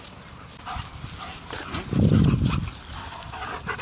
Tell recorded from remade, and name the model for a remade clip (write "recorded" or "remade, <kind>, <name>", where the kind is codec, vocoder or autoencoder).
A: recorded